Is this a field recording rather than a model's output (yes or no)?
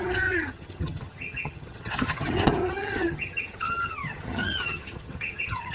no